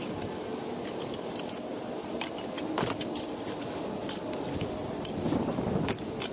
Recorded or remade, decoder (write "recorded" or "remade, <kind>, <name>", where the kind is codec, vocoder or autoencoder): recorded